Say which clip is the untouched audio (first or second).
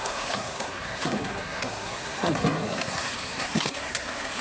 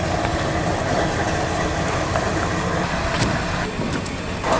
second